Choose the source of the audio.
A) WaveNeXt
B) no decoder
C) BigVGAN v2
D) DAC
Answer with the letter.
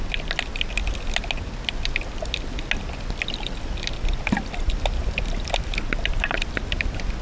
B